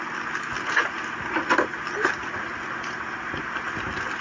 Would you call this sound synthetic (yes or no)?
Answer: no